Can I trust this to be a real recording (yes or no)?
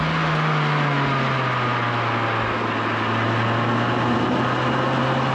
yes